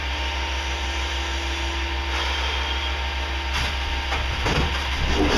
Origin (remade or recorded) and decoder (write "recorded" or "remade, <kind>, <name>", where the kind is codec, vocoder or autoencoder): recorded